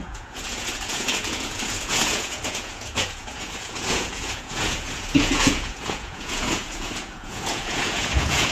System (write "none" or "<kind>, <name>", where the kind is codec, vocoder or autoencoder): vocoder, Vocos